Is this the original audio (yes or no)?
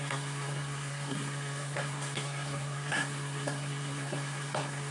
no